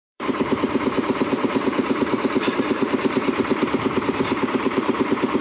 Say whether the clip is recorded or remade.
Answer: remade